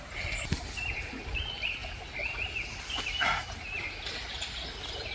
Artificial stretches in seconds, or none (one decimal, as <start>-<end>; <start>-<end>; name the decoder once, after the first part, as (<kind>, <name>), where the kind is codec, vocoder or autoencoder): none